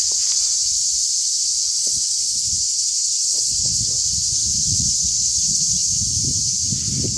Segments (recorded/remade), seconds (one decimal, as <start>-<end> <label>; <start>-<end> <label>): 0.0-1.8 recorded; 1.8-3.8 remade; 3.8-4.5 recorded; 4.5-5.9 remade; 5.9-7.2 recorded